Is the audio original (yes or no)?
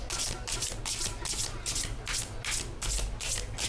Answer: yes